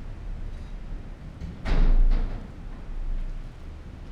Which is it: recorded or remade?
recorded